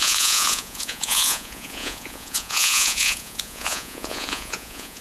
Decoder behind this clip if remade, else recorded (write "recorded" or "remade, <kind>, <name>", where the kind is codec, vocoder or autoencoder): remade, vocoder, Vocos